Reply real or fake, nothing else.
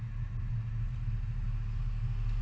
real